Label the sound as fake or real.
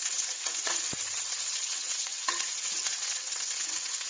fake